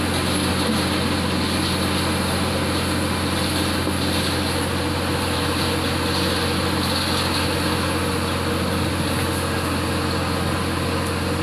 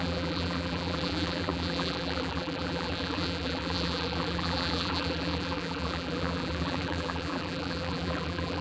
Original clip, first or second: first